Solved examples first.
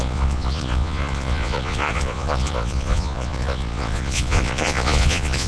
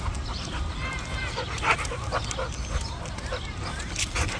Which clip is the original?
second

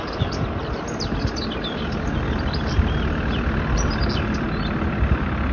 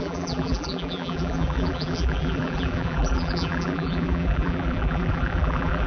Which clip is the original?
first